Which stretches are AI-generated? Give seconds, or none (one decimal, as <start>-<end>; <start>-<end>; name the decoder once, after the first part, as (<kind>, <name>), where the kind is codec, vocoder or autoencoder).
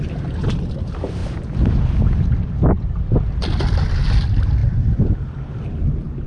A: none